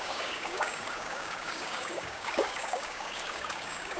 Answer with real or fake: fake